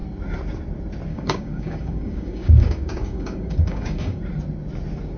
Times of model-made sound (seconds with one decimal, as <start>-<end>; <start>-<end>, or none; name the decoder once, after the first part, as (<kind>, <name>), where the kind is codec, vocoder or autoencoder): 1.1-4.2 (codec, DAC)